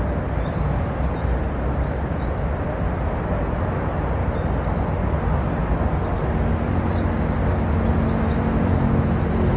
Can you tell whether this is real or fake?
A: real